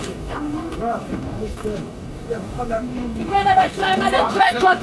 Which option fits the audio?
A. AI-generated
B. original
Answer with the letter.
A